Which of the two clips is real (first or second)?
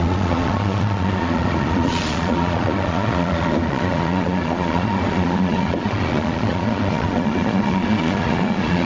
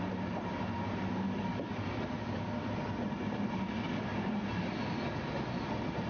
second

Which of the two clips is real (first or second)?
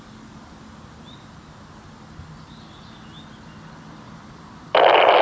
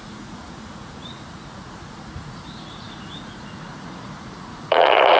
first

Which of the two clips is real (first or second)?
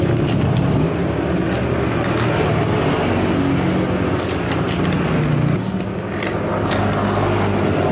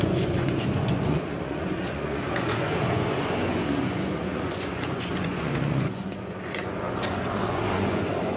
first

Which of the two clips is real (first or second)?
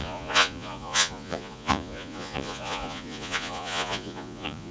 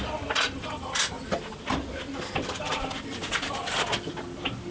second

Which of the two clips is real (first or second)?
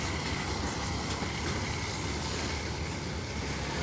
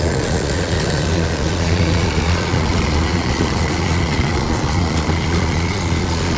first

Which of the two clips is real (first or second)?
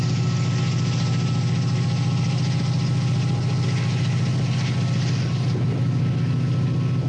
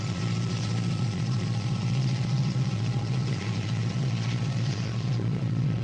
first